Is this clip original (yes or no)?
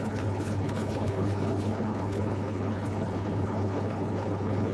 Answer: no